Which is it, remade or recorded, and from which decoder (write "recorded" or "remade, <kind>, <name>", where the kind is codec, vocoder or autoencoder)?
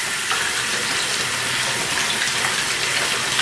recorded